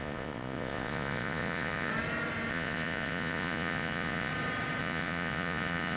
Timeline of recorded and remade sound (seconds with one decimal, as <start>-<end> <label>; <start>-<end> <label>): 0.0-1.9 remade; 1.9-2.5 recorded; 2.5-4.3 remade; 4.3-4.8 recorded; 4.8-6.0 remade